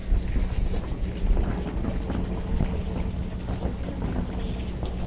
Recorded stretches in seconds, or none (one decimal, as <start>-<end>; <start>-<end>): 0.0-5.1